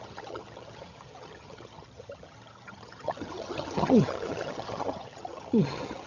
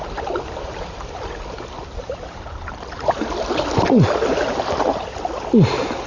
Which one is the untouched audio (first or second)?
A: second